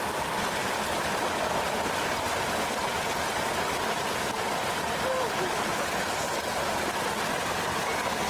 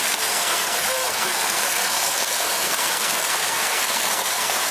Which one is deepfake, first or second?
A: second